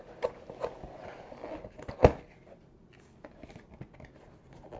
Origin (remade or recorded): recorded